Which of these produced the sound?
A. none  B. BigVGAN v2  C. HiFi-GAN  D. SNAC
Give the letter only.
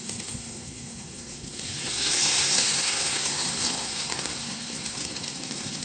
D